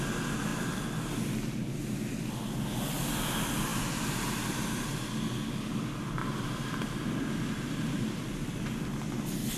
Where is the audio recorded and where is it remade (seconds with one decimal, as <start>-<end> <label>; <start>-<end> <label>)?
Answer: 0.0-6.2 recorded; 6.2-8.6 remade; 8.6-9.6 recorded